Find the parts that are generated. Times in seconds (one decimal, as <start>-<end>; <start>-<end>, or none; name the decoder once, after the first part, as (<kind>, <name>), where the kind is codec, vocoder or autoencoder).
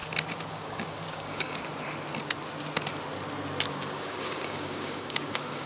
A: 0.5-1.7 (codec, DAC); 3.7-5.7